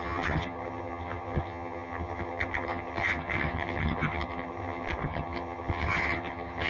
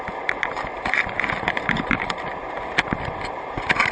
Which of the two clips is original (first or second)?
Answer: second